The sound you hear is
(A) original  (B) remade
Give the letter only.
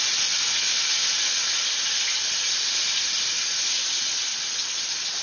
A